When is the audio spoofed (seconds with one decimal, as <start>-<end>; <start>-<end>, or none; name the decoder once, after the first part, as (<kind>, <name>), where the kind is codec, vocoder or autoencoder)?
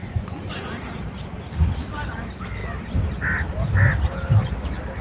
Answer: 0.0-0.7 (vocoder, Vocos)